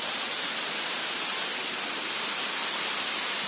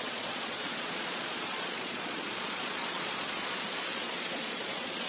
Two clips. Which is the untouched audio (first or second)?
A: first